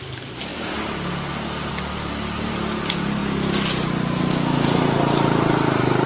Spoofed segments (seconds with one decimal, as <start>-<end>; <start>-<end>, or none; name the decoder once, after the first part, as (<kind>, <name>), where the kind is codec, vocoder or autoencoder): none